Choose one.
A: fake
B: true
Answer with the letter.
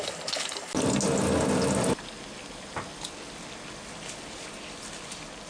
B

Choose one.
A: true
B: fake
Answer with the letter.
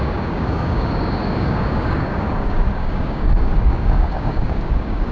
B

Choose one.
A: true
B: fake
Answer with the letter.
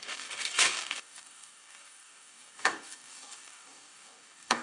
B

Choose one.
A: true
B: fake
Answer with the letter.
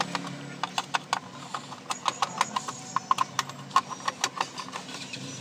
A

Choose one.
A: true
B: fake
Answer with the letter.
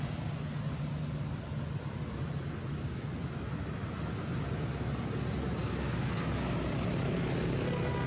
A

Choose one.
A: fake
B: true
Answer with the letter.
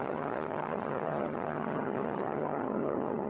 A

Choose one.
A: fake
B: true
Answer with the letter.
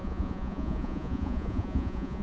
A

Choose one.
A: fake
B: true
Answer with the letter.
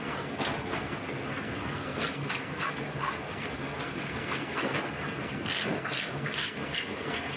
A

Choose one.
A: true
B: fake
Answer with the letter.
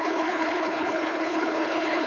B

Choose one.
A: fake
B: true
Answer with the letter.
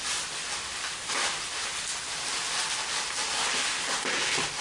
B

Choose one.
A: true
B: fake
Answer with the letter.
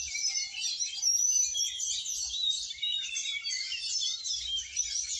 B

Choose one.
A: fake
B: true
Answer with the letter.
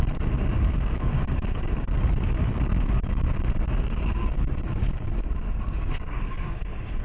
A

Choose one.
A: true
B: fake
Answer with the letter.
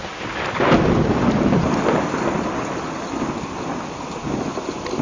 A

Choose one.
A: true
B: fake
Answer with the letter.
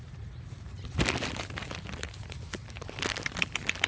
A